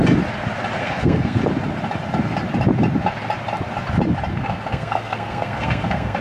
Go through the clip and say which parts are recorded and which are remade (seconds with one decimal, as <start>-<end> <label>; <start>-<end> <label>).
0.0-0.8 recorded; 0.8-1.4 remade; 1.4-4.3 recorded; 4.3-6.2 remade